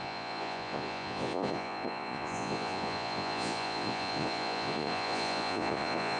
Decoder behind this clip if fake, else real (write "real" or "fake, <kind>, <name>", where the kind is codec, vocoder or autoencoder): fake, vocoder, Vocos